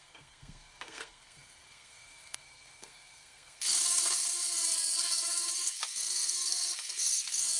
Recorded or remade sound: remade